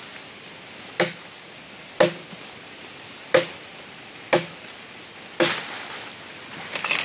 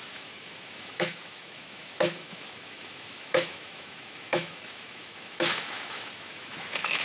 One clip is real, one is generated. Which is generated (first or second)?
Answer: second